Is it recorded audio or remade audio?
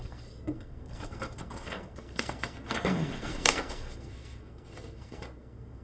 remade